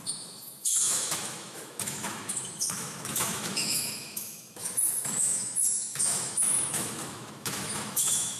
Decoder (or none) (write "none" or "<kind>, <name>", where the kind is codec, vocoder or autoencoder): autoencoder, DAC-VAE